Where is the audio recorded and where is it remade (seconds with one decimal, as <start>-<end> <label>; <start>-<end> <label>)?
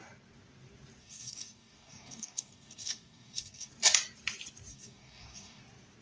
0.0-1.0 recorded; 1.0-3.7 remade; 3.7-4.7 recorded; 4.7-5.6 remade; 5.6-6.0 recorded